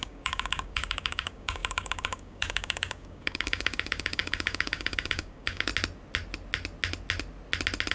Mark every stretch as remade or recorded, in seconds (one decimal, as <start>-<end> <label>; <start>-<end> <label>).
0.0-5.7 remade; 5.7-7.9 recorded